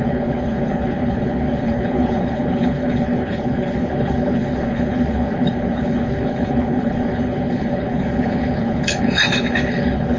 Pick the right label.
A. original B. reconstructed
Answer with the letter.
B